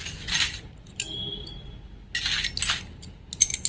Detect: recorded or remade recorded